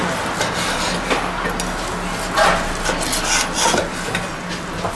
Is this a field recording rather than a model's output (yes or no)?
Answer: yes